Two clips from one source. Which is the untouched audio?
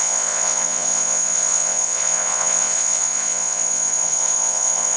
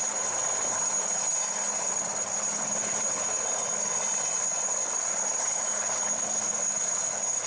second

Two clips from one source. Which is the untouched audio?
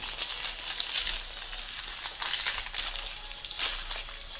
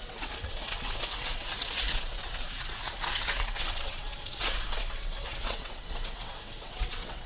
first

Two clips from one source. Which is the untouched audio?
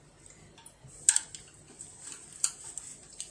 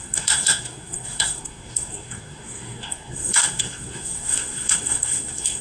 first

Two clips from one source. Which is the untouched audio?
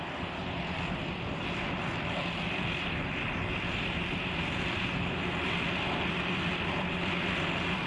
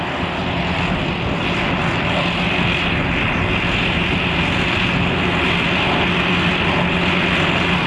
second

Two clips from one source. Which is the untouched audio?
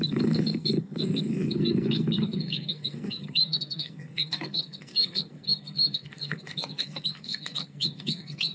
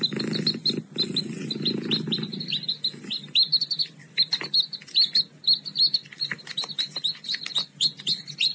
second